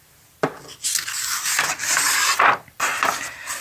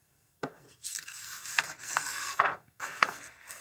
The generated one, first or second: second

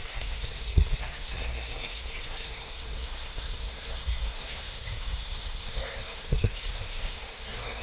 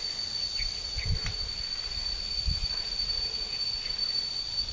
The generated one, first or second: first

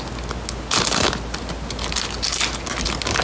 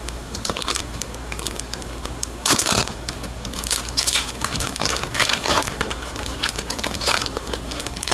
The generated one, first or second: second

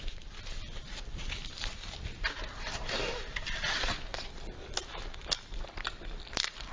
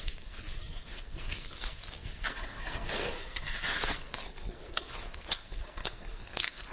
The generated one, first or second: second